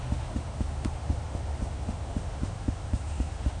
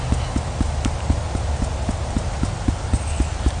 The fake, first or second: first